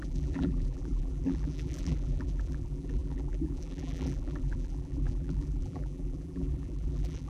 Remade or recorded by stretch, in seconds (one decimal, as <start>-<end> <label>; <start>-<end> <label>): 0.0-7.3 remade